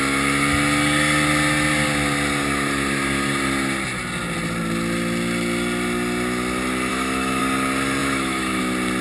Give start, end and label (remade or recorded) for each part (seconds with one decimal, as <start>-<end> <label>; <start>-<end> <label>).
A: 0.0-6.9 recorded; 6.9-7.4 remade; 7.4-8.0 recorded; 8.0-8.6 remade; 8.6-9.0 recorded